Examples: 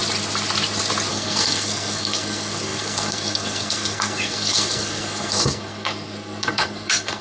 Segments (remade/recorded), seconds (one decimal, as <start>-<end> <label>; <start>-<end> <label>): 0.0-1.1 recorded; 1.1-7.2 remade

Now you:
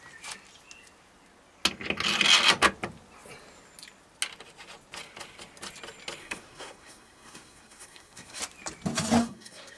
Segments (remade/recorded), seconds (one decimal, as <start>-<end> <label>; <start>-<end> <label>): 0.0-6.2 recorded; 6.2-8.4 remade; 8.4-9.2 recorded; 9.2-9.8 remade

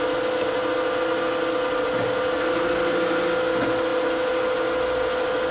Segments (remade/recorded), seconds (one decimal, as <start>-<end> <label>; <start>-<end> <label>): 0.0-5.5 recorded